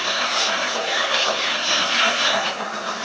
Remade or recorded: remade